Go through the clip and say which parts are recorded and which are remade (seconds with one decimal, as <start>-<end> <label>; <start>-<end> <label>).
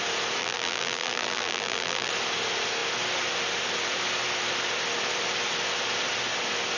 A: 0.0-0.4 recorded; 0.4-2.1 remade; 2.1-6.8 recorded